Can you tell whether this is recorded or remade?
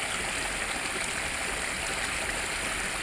recorded